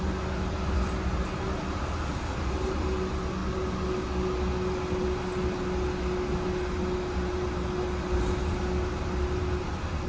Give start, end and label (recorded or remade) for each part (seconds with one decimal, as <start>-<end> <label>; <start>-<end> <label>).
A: 0.0-10.1 recorded